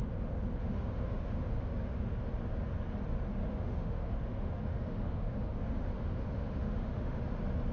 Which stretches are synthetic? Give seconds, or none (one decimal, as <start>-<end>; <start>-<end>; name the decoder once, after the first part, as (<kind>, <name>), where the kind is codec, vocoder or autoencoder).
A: 0.0-2.3 (autoencoder, DAC-VAE); 3.4-7.2